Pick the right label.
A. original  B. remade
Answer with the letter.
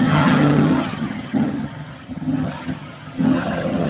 B